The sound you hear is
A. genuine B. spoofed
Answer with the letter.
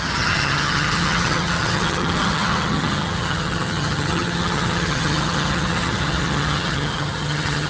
B